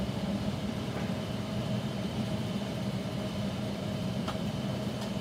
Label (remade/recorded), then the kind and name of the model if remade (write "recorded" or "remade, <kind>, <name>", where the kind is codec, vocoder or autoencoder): remade, vocoder, BigVGAN v2